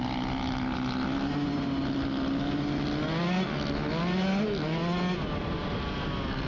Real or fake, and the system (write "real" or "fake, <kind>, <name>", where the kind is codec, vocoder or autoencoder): real